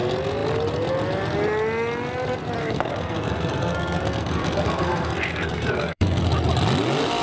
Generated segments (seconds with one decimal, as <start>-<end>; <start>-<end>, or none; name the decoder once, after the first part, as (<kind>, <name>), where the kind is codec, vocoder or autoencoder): 2.6-6.2 (codec, SNAC)